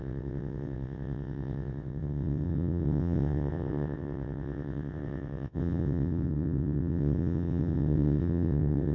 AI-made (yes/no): yes